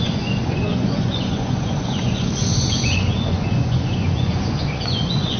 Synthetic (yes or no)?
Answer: yes